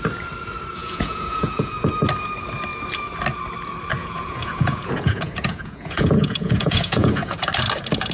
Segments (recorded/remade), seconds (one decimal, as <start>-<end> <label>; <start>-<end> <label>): 0.0-0.8 recorded; 0.8-1.9 remade; 1.9-4.0 recorded; 4.0-7.5 remade; 7.5-8.1 recorded